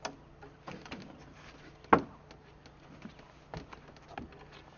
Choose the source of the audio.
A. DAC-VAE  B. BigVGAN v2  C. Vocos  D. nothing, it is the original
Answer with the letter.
D